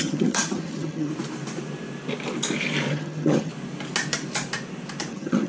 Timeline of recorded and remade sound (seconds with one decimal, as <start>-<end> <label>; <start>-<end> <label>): 0.0-1.1 remade; 1.1-2.9 recorded; 2.9-3.5 remade; 3.5-5.1 recorded; 5.1-5.5 remade